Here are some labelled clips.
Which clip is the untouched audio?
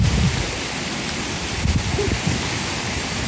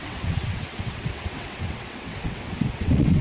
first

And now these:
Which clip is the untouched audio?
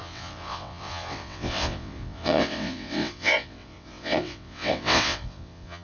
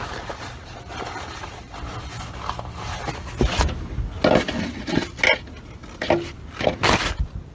second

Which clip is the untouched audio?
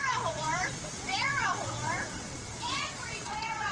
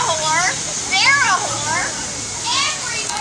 second